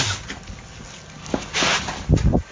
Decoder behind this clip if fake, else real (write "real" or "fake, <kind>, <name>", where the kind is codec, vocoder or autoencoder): real